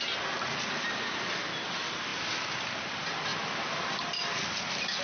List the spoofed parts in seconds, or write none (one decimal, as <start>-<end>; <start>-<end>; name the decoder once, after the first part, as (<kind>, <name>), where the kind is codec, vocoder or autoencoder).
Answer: none